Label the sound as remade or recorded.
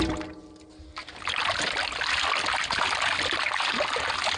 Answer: recorded